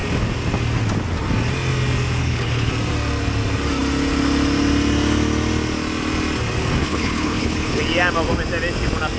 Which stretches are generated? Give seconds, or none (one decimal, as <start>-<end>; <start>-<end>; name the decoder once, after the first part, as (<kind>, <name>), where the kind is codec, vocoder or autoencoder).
2.2-2.7 (codec, HILCodec); 6.8-7.8